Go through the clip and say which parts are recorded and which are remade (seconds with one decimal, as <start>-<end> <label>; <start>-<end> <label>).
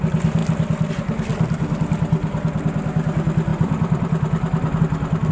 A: 0.0-3.5 recorded; 3.5-4.8 remade; 4.8-5.3 recorded